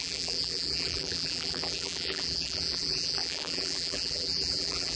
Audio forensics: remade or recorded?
remade